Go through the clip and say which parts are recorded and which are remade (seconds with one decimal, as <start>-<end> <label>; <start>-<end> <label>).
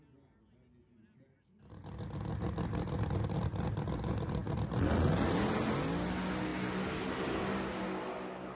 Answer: 0.0-8.6 recorded